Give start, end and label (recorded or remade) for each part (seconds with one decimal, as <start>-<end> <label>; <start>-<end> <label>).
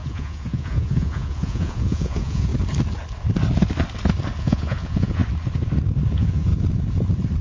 0.0-2.5 remade; 2.5-4.4 recorded; 4.4-5.2 remade; 5.2-6.1 recorded; 6.1-6.5 remade; 6.5-7.4 recorded